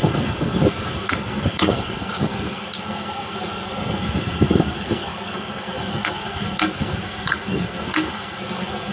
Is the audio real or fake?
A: fake